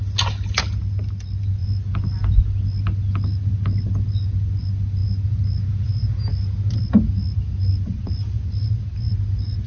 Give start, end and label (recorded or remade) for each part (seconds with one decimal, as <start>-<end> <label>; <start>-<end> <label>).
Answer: 0.0-9.7 recorded